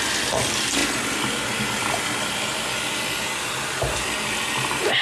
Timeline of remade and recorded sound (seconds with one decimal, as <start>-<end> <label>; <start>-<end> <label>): 0.0-5.0 recorded